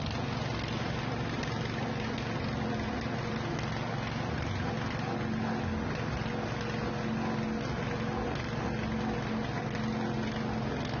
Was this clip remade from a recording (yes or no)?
no